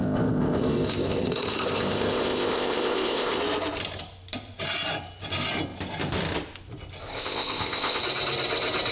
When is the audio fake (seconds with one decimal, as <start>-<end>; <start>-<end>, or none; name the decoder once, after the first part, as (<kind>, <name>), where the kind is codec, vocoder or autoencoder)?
0.0-3.4 (codec, ZipCodec); 7.0-8.0